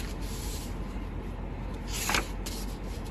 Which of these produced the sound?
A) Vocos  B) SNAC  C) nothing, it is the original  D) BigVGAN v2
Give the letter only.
C